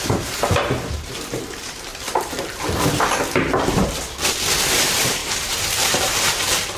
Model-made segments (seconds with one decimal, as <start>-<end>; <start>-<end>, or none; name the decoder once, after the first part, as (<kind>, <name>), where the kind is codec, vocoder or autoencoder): 0.0-1.9 (vocoder, BigVGAN v2); 4.6-6.8